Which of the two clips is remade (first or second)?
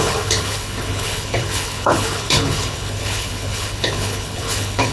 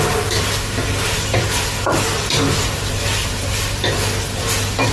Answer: first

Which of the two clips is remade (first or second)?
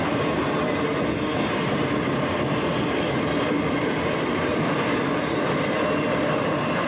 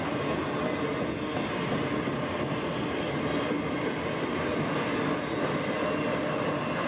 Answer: first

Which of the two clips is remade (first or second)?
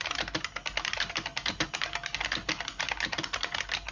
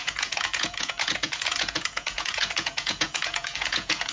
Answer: second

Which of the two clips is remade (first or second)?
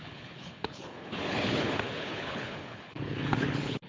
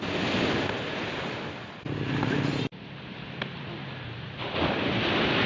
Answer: first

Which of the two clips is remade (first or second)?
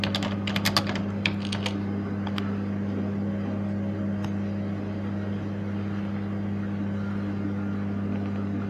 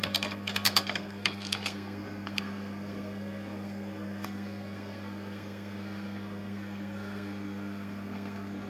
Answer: second